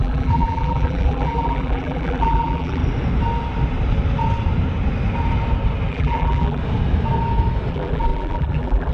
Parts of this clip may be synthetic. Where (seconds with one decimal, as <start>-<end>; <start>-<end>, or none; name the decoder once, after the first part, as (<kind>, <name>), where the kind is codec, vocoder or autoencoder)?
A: 0.0-2.8 (vocoder, BigVGAN v2); 5.9-6.6; 7.7-8.9